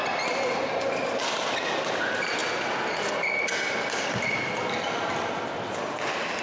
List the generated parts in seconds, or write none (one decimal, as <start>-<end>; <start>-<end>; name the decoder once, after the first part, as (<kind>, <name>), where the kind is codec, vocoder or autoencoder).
none